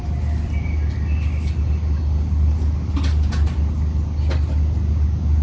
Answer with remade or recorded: recorded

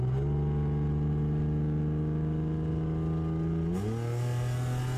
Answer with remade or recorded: recorded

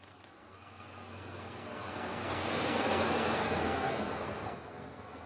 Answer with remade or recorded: remade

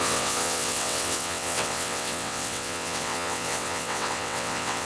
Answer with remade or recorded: remade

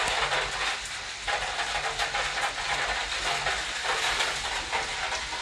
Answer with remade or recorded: recorded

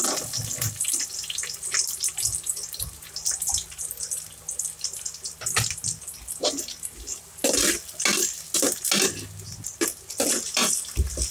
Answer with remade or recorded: recorded